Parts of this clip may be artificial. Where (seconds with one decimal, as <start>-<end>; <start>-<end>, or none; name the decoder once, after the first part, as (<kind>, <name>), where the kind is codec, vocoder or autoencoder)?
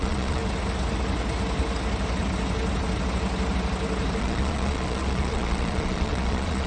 0.0-0.4 (vocoder, Vocos); 4.2-6.7